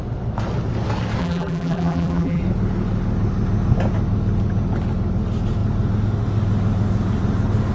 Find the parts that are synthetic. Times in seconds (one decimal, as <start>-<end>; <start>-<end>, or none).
1.2-2.4

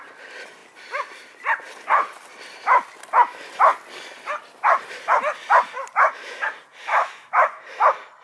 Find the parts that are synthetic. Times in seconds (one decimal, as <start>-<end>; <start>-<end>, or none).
6.8-7.6

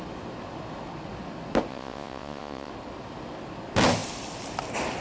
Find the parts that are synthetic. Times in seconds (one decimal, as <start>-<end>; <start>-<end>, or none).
1.7-2.7

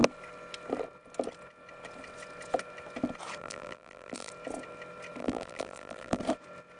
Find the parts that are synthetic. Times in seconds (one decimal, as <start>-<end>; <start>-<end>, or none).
3.4-4.3; 5.2-6.2